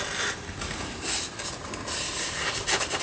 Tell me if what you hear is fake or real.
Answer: real